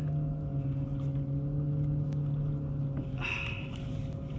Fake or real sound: real